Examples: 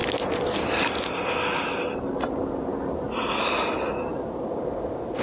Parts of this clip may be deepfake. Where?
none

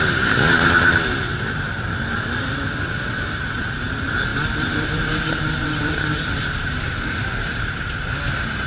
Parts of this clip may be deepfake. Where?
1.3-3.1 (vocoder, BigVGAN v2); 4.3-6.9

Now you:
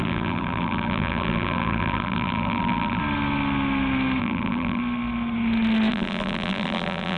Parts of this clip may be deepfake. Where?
0.0-3.0 (vocoder, BigVGAN v2); 4.2-4.8; 5.9-7.2